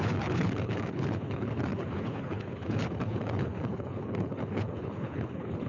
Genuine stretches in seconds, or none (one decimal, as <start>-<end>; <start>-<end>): none